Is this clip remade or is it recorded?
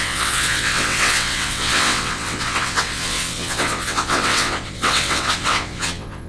remade